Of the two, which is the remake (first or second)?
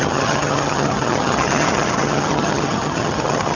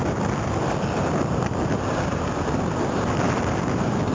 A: first